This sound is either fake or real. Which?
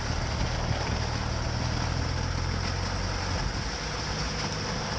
real